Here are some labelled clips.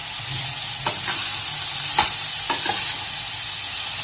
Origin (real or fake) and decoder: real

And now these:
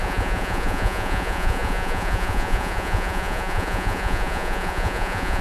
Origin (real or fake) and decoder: fake, vocoder, Vocos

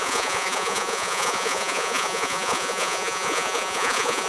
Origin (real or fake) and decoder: fake, vocoder, Vocos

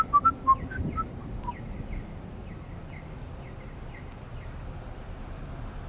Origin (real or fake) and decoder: real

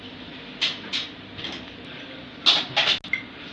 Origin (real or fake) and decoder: real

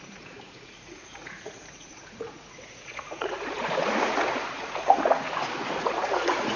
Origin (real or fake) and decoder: fake, vocoder, Vocos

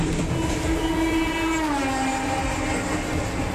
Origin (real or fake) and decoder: real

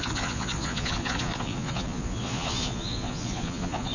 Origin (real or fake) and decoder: fake, vocoder, Vocos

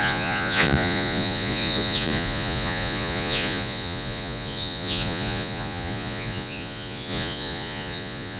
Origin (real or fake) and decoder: fake, vocoder, Vocos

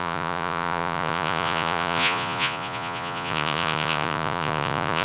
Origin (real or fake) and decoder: fake, vocoder, Vocos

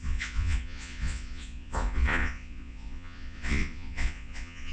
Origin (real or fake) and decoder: fake, vocoder, Vocos